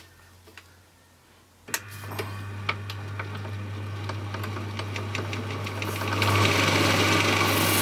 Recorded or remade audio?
recorded